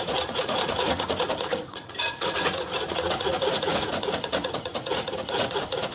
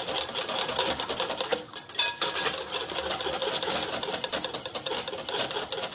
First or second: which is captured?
second